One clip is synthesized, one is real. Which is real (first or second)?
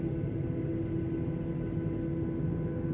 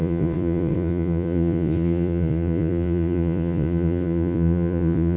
first